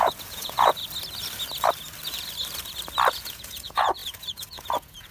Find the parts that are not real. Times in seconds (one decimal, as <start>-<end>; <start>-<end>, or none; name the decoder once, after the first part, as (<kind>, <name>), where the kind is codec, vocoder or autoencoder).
0.0-0.8 (vocoder, Vocos); 3.1-5.1